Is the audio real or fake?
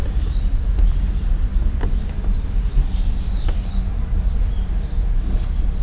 real